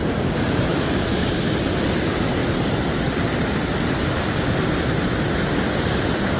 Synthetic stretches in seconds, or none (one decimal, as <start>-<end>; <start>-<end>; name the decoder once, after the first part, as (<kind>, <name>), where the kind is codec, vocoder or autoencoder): 0.0-1.3 (vocoder, BigVGAN v2)